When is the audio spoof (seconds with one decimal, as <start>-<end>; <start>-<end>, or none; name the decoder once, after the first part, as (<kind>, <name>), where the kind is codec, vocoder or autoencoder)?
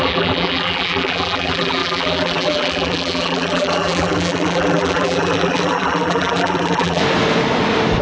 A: 0.0-7.0 (vocoder, BigVGAN v2)